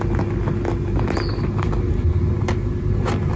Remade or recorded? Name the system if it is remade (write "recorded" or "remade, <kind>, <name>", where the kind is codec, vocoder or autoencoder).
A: recorded